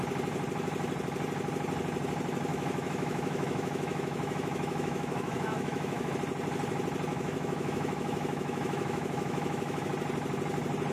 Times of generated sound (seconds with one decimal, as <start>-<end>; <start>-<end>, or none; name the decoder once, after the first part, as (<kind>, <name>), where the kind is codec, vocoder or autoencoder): 2.5-6.1 (autoencoder, DAC-VAE); 7.1-9.9